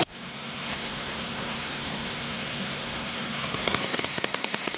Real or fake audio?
fake